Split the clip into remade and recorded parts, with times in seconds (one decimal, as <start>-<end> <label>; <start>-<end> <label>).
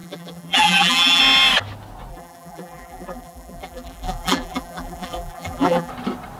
0.0-1.2 remade; 1.2-2.1 recorded; 2.1-5.9 remade; 5.9-6.4 recorded